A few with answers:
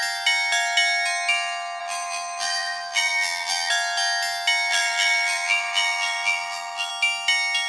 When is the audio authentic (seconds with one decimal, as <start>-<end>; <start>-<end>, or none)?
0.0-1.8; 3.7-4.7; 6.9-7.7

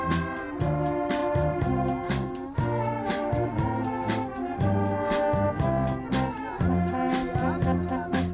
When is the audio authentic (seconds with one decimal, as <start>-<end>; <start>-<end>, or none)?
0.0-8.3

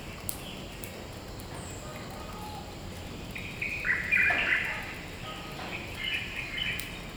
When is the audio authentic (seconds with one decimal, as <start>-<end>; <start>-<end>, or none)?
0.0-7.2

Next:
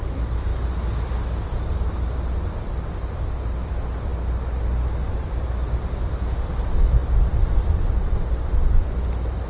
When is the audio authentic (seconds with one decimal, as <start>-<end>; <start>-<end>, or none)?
0.0-9.5

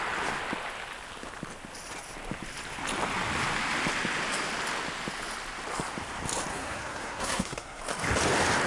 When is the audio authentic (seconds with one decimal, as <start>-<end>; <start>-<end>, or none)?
0.0-6.5; 7.8-8.7

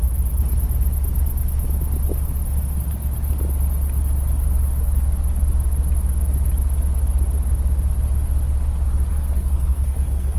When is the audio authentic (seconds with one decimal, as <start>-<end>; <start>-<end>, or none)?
0.0-9.1

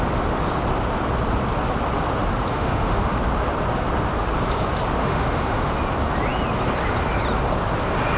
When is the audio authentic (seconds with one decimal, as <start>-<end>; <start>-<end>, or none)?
0.0-2.5; 3.2-5.0; 5.7-8.2

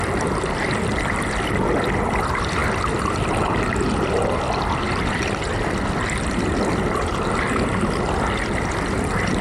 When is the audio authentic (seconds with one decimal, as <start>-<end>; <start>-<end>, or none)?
0.0-9.4